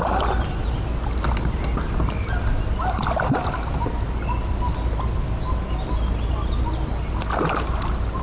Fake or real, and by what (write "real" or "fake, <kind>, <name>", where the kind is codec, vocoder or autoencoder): real